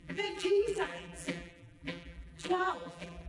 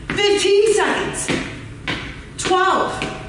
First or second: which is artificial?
first